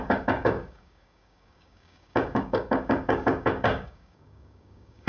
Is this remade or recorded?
remade